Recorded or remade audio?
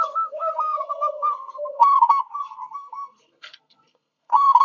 remade